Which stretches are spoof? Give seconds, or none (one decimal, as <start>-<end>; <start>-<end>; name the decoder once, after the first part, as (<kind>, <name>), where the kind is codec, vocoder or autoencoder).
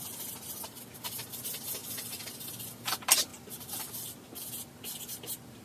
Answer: none